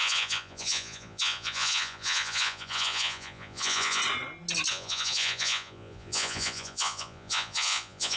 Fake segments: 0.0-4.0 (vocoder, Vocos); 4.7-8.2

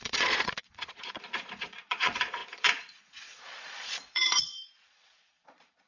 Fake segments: 0.0-5.9 (vocoder, Vocos)

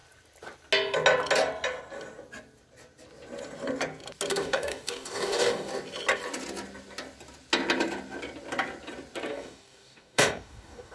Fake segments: 4.3-5.7 (codec, DAC); 9.3-10.9

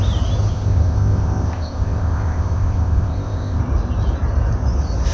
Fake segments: 0.5-3.6 (codec, ZipCodec)